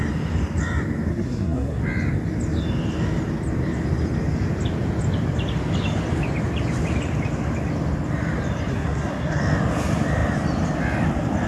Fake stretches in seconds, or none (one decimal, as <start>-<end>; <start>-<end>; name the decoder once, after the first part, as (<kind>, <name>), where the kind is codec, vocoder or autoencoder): 1.1-1.8 (codec, SNAC); 8.7-9.4